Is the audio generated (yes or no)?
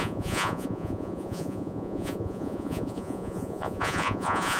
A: yes